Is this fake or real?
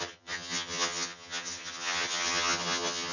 fake